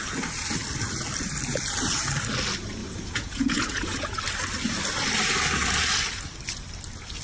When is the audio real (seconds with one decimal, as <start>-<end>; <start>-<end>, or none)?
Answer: 0.0-2.8; 4.2-7.2